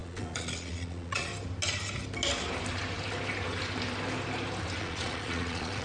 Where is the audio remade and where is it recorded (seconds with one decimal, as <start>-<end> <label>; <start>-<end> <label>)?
0.0-1.3 remade; 1.3-4.8 recorded; 4.8-5.8 remade